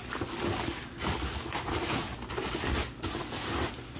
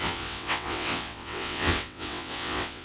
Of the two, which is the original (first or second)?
first